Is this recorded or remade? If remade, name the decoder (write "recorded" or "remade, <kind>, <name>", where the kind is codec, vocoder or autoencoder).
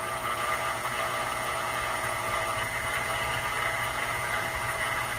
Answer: remade, vocoder, Vocos